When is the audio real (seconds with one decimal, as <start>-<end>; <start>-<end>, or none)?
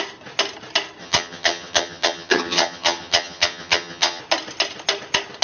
0.0-1.0; 4.2-5.4